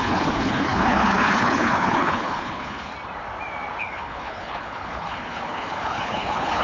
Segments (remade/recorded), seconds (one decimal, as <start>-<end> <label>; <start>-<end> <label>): 0.0-2.9 remade; 2.9-3.8 recorded; 3.8-6.6 remade